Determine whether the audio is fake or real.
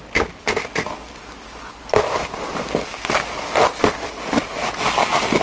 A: real